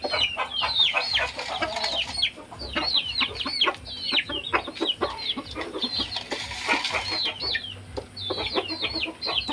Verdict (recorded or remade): recorded